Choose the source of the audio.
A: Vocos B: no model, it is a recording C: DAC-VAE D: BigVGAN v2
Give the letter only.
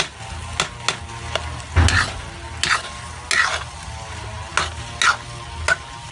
B